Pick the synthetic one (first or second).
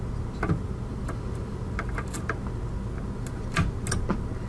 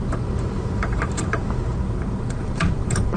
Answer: second